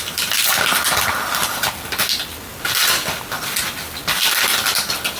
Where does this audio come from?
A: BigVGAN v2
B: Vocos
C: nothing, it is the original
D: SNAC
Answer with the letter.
C